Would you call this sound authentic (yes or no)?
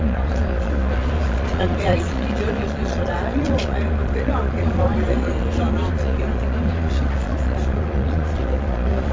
no